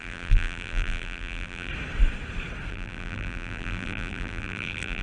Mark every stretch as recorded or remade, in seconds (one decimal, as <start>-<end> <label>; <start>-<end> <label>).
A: 0.0-1.7 remade; 1.7-2.7 recorded; 2.7-5.0 remade